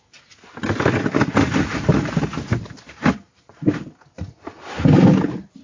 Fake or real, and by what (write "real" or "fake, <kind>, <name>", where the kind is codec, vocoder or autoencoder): real